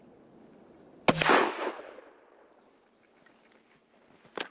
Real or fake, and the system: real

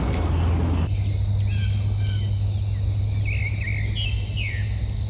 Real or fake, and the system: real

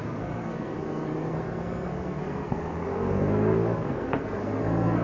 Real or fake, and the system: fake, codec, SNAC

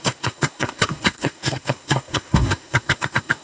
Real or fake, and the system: fake, codec, SNAC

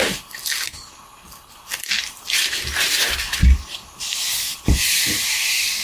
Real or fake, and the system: real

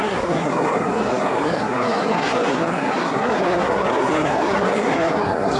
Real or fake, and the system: fake, codec, SNAC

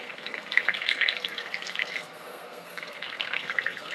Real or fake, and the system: fake, codec, SNAC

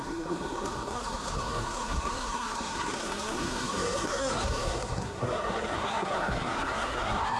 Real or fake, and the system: fake, codec, SNAC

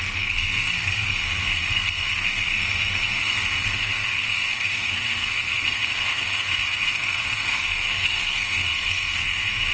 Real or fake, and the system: fake, codec, SNAC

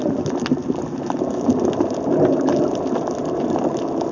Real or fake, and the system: real